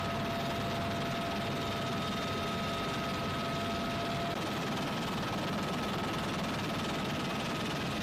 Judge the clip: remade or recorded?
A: recorded